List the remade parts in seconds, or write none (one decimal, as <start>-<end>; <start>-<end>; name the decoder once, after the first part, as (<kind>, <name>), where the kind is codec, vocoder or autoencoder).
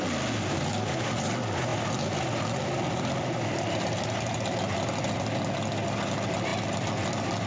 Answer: none